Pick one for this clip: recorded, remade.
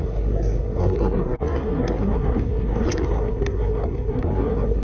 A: remade